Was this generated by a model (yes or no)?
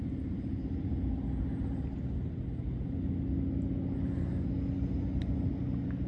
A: no